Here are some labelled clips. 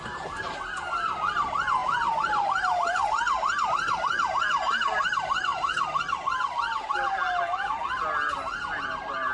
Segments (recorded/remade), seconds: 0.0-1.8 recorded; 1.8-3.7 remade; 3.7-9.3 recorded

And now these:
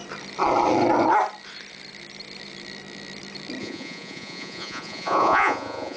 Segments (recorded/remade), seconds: 0.0-3.6 recorded; 3.6-6.0 remade

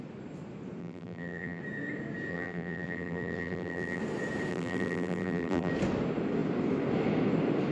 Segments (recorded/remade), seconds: 0.0-0.8 recorded; 0.8-1.6 remade; 1.6-2.3 recorded; 2.3-4.0 remade; 4.0-4.5 recorded; 4.5-5.7 remade; 5.7-7.7 recorded

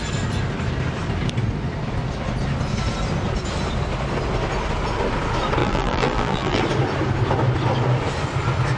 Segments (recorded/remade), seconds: 0.0-5.6 recorded; 5.6-6.6 remade; 6.6-8.8 recorded

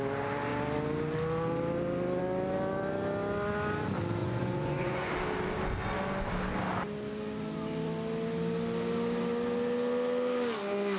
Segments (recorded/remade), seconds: 0.0-4.2 recorded; 4.2-5.1 remade; 5.1-11.0 recorded

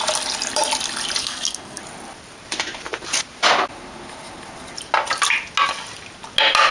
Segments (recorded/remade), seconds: 0.0-1.2 recorded; 1.2-1.8 remade; 1.8-6.7 recorded